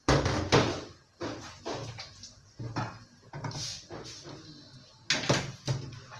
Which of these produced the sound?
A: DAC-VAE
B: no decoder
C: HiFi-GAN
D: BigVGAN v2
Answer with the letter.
B